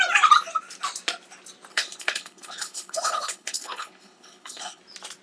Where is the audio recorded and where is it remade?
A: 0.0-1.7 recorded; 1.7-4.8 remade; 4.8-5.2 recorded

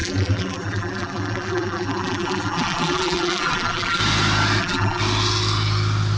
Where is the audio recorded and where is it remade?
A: 0.0-4.0 remade; 4.0-4.6 recorded; 4.6-5.0 remade; 5.0-6.2 recorded

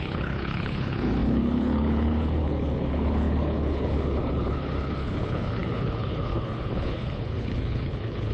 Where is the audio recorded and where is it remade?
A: 0.0-8.3 remade